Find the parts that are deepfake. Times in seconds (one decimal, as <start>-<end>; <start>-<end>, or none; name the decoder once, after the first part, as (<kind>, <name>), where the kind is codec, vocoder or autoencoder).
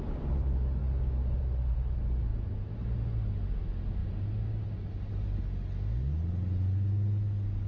0.8-1.4 (codec, DAC)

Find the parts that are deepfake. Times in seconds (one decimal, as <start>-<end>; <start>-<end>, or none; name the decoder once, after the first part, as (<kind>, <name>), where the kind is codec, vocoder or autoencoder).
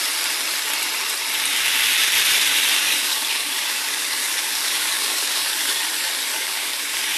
2.8-5.8 (codec, DAC); 6.3-7.2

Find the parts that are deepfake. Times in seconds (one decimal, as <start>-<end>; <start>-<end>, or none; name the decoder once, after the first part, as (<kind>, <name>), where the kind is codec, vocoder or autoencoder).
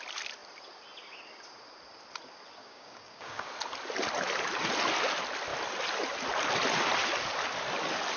2.6-3.5 (codec, DAC)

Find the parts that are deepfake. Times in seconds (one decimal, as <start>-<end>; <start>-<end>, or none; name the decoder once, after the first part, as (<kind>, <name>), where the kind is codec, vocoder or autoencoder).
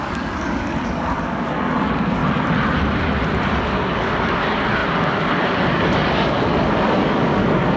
0.0-2.2 (codec, DAC); 3.6-7.8